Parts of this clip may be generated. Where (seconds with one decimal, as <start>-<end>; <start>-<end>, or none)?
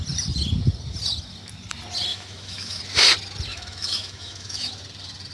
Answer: 2.1-2.8; 3.5-4.7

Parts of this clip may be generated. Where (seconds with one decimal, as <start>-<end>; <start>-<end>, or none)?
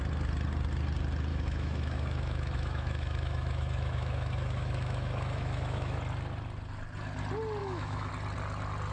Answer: 1.3-6.0; 7.6-8.1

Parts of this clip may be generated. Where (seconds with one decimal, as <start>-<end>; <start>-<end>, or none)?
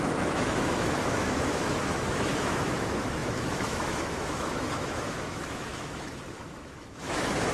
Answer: 0.0-7.5